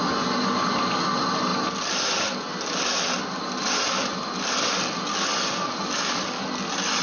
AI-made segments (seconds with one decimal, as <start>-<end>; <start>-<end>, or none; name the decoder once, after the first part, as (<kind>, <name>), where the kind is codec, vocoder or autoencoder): none